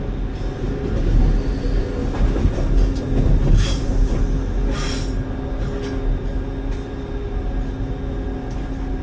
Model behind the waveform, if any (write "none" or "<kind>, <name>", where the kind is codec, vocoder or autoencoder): none